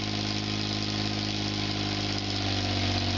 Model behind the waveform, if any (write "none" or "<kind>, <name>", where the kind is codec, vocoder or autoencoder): none